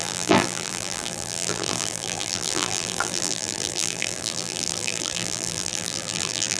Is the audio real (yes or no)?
no